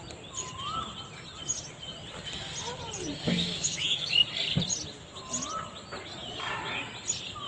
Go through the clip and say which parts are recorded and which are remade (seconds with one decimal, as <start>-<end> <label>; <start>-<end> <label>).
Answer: 0.0-3.4 recorded; 3.4-4.1 remade; 4.1-7.5 recorded